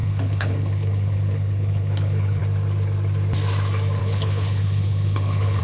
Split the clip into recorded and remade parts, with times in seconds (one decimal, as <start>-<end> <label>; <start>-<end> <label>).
0.0-2.4 remade; 2.4-4.0 recorded; 4.0-5.6 remade